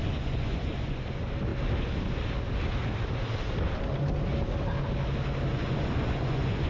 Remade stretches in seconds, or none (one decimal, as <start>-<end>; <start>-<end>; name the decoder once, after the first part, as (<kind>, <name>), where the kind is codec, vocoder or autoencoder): 0.0-1.0 (vocoder, Vocos); 5.5-6.7